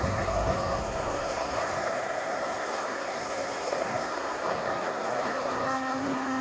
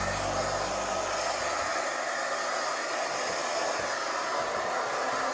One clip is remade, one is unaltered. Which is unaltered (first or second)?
second